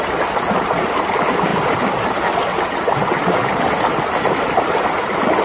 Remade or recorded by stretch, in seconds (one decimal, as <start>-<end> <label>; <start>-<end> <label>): 0.0-5.4 recorded